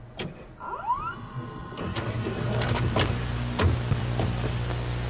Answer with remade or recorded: recorded